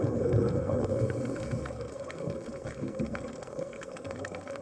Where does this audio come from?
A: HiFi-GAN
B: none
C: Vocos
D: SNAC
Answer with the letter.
D